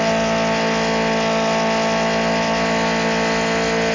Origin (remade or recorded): recorded